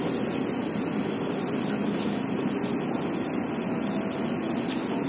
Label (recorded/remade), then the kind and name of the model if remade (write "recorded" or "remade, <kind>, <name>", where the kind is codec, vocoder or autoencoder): recorded